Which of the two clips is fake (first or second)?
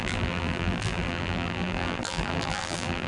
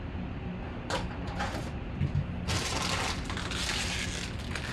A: first